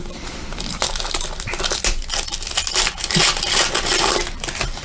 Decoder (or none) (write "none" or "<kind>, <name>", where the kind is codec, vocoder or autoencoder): none